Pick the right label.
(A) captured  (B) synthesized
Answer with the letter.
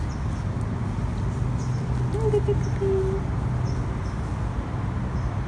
A